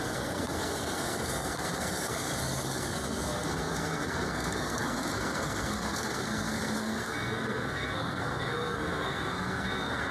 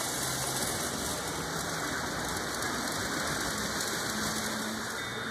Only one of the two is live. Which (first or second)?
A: second